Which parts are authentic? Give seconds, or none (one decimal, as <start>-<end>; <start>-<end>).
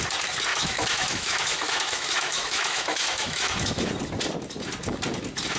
0.0-0.5; 3.9-5.6